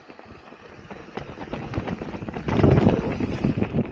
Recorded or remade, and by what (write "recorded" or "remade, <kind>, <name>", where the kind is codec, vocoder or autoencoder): recorded